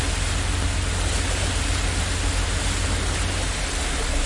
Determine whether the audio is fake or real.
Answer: real